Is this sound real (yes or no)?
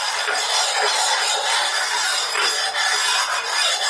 yes